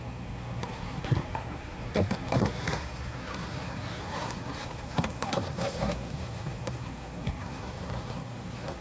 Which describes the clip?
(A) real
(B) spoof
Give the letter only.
B